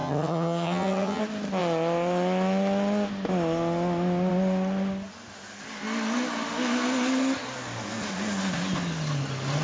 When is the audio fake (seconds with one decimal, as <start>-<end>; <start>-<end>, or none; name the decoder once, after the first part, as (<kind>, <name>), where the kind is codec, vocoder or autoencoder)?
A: 0.0-1.2 (vocoder, HiFi-GAN)